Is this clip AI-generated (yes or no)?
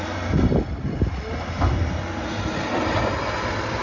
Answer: no